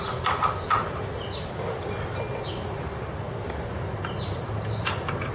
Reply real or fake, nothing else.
real